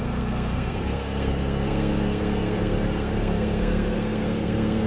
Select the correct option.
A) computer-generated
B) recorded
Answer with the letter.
A